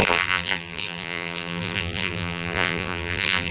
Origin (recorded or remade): remade